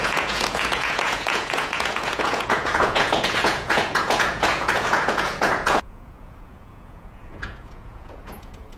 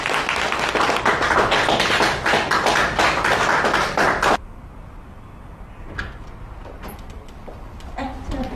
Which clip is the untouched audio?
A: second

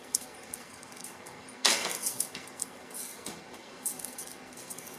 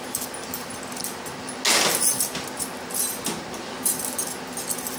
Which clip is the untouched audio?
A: second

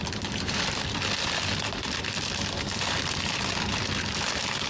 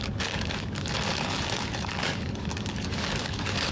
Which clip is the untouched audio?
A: first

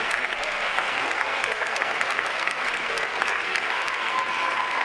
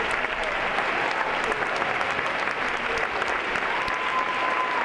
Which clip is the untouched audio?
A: second